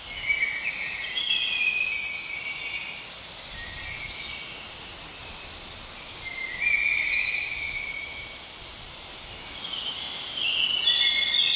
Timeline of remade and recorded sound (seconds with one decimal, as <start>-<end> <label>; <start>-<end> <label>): 0.0-11.6 recorded